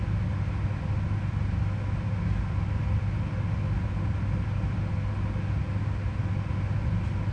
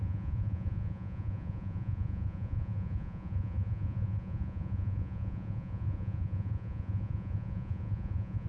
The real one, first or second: first